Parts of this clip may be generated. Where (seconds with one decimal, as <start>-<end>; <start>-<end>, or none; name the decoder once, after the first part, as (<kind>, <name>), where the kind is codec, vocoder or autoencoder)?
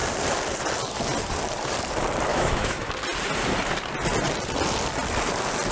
2.3-2.9 (autoencoder, DAC-VAE)